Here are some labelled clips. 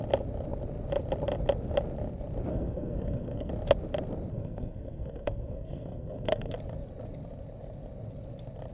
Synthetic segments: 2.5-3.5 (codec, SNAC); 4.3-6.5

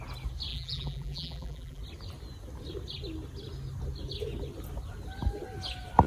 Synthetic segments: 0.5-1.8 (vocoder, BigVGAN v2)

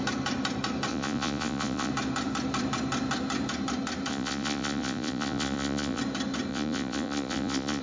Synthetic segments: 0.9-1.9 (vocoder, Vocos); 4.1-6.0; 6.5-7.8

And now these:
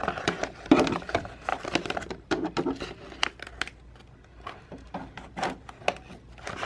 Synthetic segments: none